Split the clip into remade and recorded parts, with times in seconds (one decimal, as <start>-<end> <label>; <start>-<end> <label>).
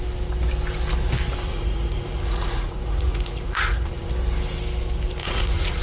0.0-1.5 recorded; 1.5-4.1 remade; 4.1-5.2 recorded; 5.2-5.8 remade